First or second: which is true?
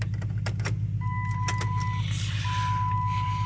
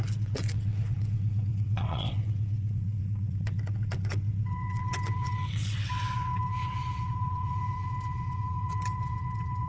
first